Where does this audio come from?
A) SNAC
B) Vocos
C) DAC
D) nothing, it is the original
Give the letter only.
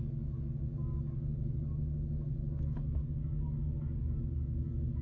C